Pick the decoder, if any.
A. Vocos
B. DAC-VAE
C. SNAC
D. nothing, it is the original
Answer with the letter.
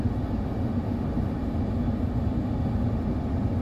D